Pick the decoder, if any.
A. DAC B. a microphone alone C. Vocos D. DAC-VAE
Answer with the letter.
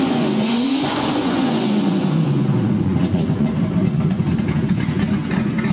C